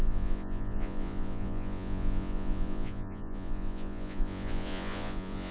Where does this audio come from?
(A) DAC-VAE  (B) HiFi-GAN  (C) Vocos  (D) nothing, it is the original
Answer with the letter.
C